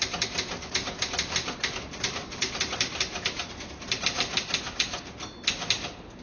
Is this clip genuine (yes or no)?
yes